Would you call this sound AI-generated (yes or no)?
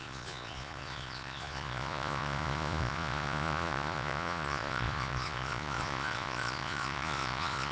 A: yes